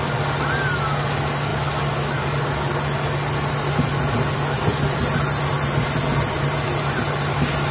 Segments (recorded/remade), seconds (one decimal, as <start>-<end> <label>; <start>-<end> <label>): 0.0-7.7 recorded